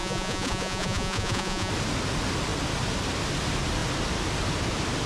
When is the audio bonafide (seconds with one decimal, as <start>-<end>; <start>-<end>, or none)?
1.7-5.1